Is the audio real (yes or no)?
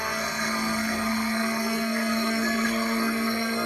no